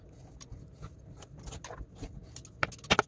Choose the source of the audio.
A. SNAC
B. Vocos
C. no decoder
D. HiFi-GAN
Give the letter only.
C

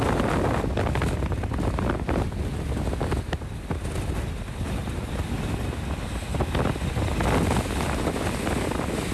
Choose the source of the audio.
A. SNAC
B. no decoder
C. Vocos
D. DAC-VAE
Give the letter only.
B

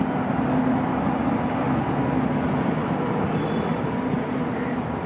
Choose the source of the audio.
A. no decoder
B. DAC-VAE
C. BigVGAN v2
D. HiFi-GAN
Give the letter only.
A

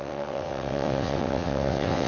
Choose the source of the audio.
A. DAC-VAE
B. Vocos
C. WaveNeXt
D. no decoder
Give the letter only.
C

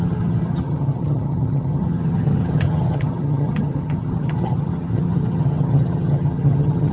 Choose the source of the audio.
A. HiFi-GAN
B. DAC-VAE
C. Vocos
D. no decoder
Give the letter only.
A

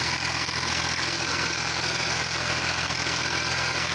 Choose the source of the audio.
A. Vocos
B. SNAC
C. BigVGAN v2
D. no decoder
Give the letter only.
B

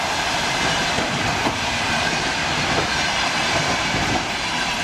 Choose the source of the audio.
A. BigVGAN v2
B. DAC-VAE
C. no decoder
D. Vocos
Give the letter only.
A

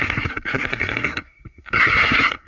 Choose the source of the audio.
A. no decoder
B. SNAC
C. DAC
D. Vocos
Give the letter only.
B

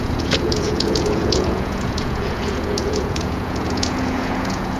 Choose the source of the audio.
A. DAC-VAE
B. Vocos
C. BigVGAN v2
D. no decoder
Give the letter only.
B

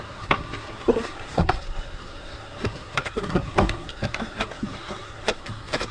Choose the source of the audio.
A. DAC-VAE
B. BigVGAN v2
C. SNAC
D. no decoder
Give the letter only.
C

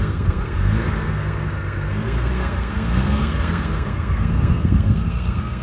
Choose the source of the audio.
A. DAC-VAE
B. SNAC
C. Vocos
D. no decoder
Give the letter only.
B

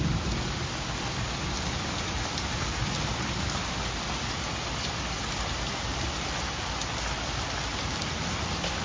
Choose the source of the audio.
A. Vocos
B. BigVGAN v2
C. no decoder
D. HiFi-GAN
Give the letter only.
B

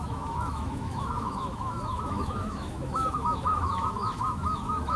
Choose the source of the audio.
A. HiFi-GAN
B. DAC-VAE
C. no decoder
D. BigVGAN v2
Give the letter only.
B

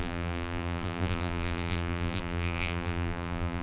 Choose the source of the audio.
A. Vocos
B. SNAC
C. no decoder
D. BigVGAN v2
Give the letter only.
D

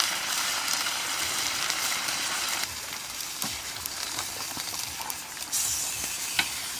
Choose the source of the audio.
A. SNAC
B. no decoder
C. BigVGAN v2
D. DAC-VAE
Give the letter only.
C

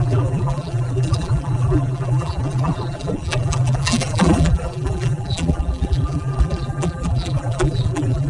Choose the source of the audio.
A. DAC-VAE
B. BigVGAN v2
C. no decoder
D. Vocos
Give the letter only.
B